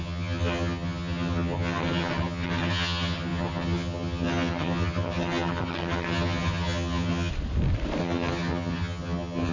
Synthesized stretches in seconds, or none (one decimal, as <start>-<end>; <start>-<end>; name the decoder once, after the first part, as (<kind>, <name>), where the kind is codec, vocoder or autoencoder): 0.0-7.3 (vocoder, HiFi-GAN); 8.0-9.5